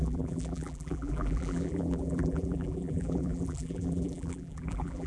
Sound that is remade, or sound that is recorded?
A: remade